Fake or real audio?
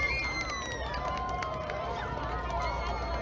real